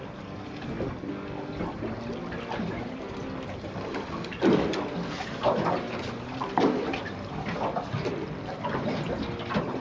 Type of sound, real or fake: real